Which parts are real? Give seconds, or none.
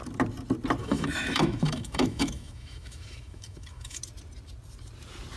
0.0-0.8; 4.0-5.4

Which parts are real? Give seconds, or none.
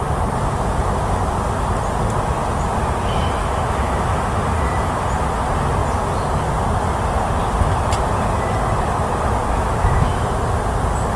0.0-3.4; 4.2-9.4; 10.3-11.2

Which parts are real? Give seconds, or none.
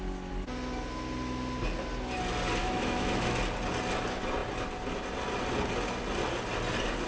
0.0-2.6; 3.4-7.1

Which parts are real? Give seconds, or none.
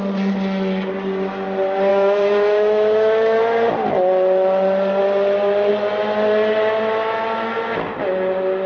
0.0-1.9; 3.4-8.7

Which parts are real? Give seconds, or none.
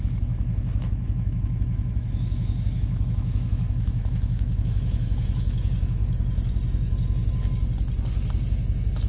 6.0-9.1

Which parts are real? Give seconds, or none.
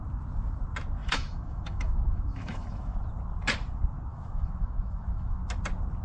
0.0-1.0; 3.0-4.1; 5.4-6.0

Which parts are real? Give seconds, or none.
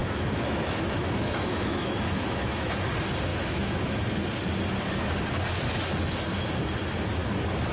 2.9-3.3; 4.0-7.7